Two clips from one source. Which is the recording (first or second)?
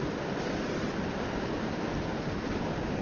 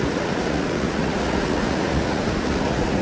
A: first